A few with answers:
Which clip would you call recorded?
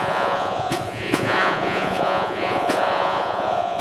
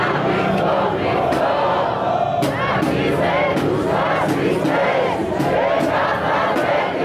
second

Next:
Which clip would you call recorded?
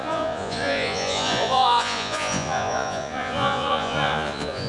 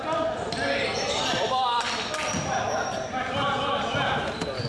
second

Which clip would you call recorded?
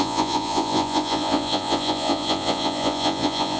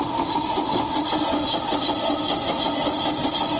second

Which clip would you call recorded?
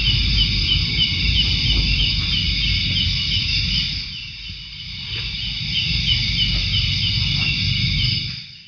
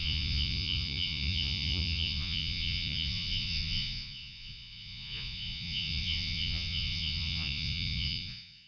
first